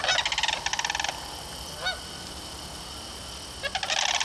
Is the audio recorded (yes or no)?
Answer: yes